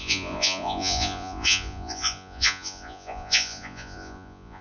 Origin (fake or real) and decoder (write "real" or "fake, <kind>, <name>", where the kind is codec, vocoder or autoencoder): fake, vocoder, Vocos